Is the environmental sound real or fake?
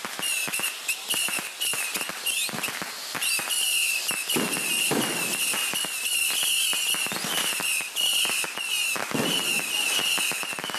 real